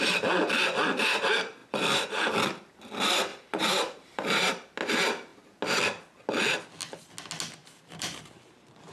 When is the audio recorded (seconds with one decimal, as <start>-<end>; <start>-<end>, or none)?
0.0-3.3; 4.5-7.6